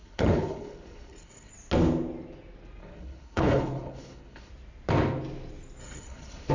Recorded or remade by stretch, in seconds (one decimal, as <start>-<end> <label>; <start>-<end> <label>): 0.0-1.5 remade; 1.5-2.8 recorded; 2.8-4.5 remade; 4.5-5.8 recorded; 5.8-6.5 remade